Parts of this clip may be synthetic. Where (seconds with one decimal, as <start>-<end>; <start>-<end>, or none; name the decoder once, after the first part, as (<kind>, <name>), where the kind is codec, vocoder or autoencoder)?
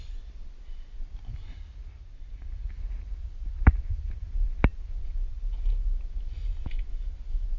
none